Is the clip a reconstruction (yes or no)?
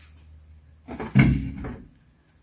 no